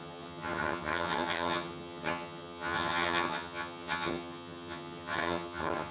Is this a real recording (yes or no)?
no